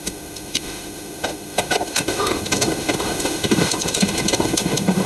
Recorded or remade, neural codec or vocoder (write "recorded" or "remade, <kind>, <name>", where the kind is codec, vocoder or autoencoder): remade, autoencoder, DAC-VAE